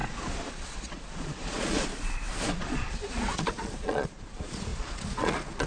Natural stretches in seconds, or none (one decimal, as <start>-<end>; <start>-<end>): 1.9-2.5